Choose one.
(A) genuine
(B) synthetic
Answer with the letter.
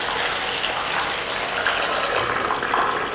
A